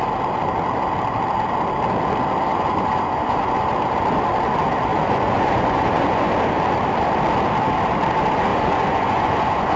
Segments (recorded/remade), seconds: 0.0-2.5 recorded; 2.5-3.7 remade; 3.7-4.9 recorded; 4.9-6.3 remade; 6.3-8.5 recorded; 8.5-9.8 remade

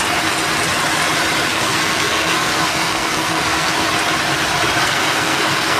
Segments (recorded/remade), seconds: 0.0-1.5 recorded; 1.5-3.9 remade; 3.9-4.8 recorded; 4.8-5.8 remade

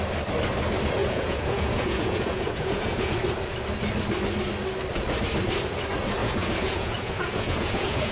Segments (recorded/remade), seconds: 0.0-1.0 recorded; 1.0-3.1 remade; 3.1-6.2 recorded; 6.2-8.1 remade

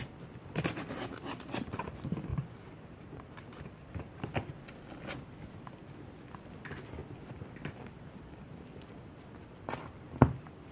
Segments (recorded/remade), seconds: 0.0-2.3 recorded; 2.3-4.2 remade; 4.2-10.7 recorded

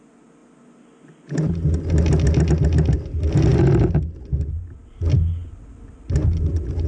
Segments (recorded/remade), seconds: 0.0-6.9 recorded